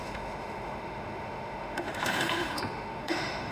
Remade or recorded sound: remade